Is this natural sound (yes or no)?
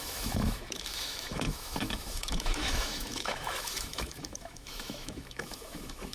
no